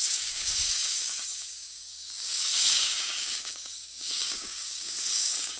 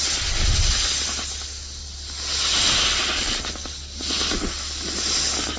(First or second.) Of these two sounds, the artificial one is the first